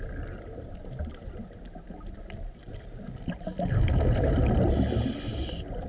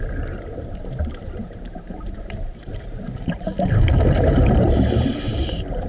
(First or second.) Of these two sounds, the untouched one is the first